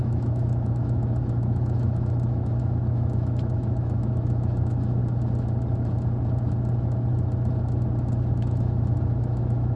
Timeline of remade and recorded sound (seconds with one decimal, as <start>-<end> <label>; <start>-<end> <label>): 0.0-5.0 remade; 5.0-8.3 recorded; 8.3-9.8 remade